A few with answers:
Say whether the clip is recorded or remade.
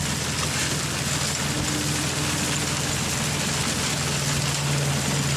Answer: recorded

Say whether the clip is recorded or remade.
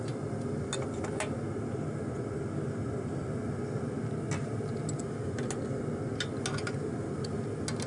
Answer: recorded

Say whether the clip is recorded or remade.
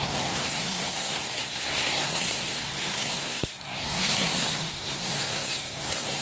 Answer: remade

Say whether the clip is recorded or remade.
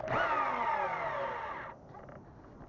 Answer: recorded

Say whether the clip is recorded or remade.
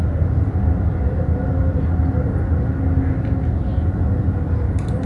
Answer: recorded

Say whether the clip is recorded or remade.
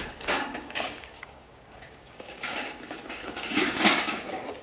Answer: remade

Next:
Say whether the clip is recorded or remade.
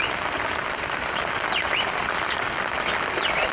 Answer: recorded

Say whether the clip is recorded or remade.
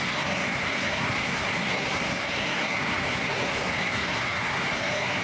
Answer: remade